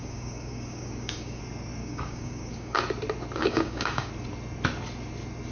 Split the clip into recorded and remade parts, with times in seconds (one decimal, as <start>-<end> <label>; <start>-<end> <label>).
0.0-1.4 remade; 1.4-1.8 recorded; 1.8-2.8 remade; 2.8-3.4 recorded; 3.4-4.1 remade; 4.1-5.5 recorded